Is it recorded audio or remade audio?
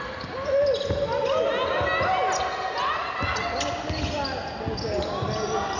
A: recorded